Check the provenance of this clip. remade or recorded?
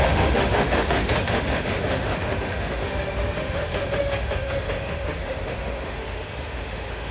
remade